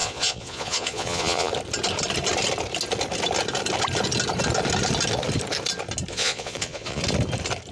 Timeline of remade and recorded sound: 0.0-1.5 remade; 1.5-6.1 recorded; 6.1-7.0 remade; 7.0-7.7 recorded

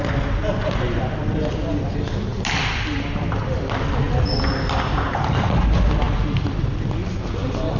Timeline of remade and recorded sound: 0.0-7.8 recorded

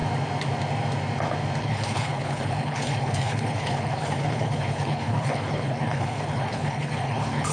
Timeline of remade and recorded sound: 0.0-1.6 recorded; 1.6-7.5 remade

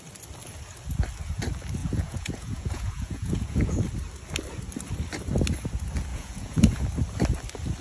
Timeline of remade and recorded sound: 0.0-1.8 recorded; 1.8-3.8 remade; 3.8-6.1 recorded; 6.1-6.8 remade; 6.8-7.8 recorded

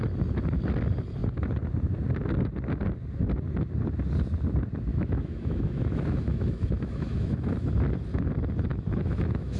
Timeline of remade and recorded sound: 0.0-4.9 recorded; 4.9-7.7 remade; 7.7-8.7 recorded; 8.7-9.6 remade

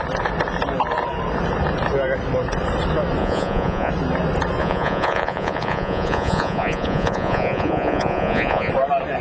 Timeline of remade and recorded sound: 0.0-3.2 recorded; 3.2-3.9 remade; 3.9-4.6 recorded; 4.6-8.7 remade; 8.7-9.2 recorded

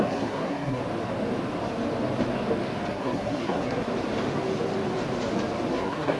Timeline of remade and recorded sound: 0.0-0.8 remade; 0.8-2.9 recorded; 2.9-3.9 remade; 3.9-5.7 recorded; 5.7-6.2 remade

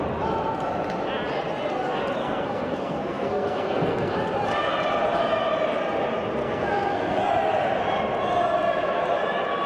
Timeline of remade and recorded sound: 0.0-2.2 recorded; 2.2-4.1 remade; 4.1-6.4 recorded; 6.4-7.2 remade; 7.2-9.7 recorded